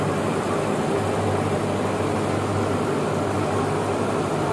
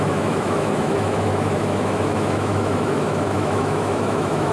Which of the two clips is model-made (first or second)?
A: second